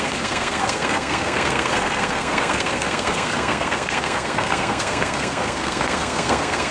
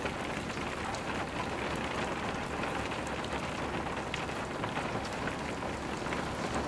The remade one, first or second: first